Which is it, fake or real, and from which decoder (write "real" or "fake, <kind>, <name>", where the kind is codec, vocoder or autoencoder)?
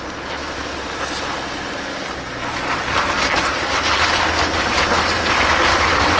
real